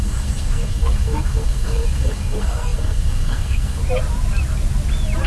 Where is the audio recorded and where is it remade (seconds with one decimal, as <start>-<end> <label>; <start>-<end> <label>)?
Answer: 0.0-3.8 remade; 3.8-5.3 recorded